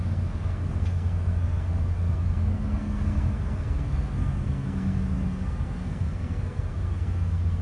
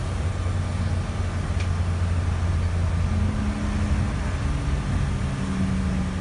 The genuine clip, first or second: second